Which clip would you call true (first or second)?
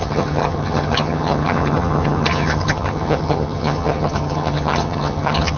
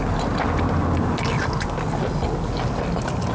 second